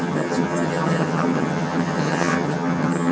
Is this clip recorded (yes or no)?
no